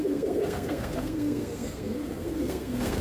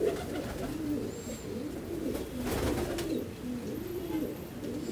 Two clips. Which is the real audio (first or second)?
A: second